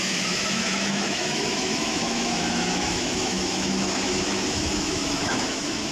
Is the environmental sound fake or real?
fake